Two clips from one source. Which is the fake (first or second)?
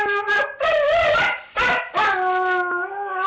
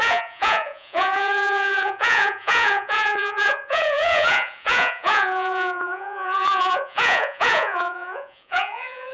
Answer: second